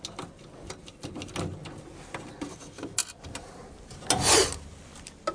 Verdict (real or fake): real